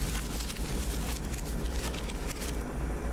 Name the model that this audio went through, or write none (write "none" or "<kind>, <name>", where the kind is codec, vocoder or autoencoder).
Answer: none